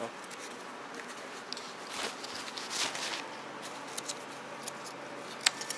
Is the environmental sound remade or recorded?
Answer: recorded